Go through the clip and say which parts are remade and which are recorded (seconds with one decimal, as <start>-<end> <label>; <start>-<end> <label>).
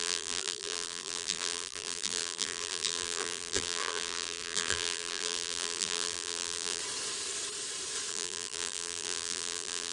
0.0-6.8 remade; 6.8-8.1 recorded; 8.1-9.9 remade